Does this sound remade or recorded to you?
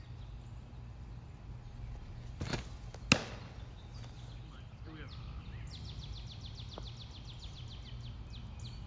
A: recorded